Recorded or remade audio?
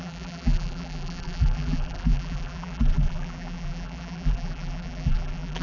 remade